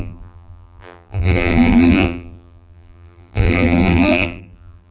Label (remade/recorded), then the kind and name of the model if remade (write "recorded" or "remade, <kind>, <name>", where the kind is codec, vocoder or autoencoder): remade, vocoder, BigVGAN v2